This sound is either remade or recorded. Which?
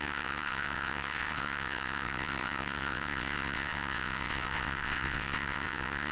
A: remade